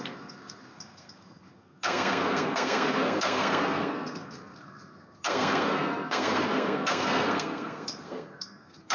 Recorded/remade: remade